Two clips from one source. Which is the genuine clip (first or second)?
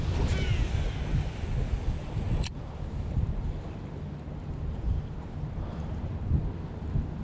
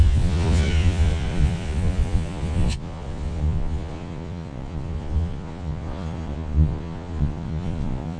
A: first